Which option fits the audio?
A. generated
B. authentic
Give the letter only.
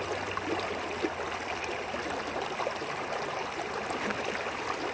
B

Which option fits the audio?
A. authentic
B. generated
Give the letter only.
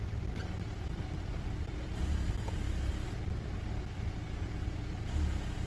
A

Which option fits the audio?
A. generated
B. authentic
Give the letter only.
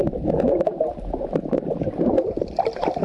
B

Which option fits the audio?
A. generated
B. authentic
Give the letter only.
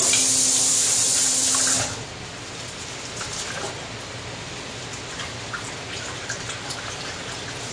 B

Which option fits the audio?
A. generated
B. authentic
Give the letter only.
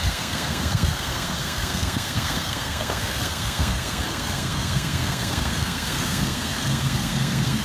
A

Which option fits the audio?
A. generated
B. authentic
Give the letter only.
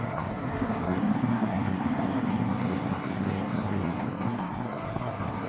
A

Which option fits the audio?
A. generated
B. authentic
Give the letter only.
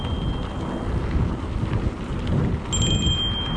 B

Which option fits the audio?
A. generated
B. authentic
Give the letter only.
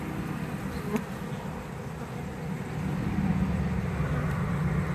B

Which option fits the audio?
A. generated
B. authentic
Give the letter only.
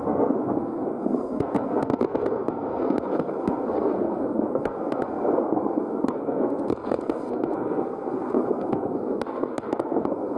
A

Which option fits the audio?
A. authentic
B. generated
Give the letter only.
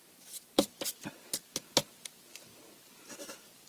A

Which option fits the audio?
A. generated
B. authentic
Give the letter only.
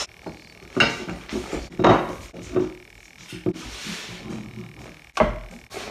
B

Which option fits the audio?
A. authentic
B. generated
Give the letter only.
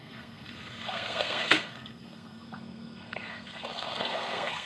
B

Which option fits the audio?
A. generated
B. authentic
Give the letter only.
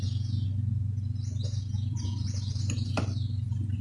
B